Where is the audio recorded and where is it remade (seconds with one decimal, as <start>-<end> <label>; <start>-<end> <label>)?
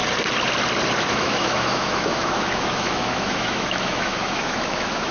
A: 0.0-1.1 recorded; 1.1-5.1 remade